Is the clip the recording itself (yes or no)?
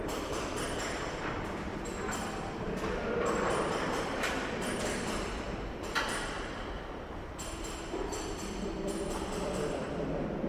no